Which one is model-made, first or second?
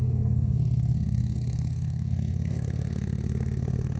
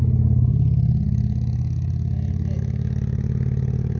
first